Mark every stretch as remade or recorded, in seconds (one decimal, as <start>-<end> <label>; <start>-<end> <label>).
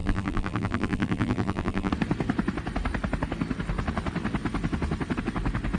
0.0-1.9 remade; 1.9-5.8 recorded